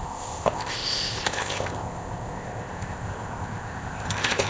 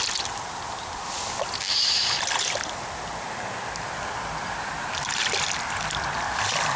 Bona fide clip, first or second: second